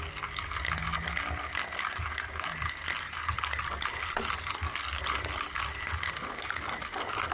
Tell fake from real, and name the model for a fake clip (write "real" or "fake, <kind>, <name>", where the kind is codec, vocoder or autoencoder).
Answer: real